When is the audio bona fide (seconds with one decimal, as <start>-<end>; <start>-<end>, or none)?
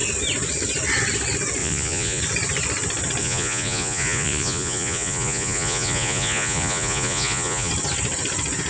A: 0.0-1.6; 2.2-3.2; 7.7-8.7